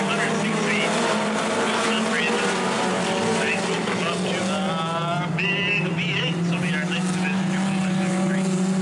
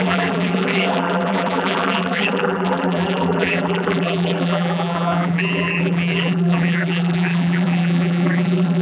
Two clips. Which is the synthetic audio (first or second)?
second